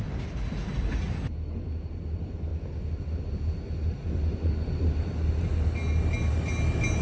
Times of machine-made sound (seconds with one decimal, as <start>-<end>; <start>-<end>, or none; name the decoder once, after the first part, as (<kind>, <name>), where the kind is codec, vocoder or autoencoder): none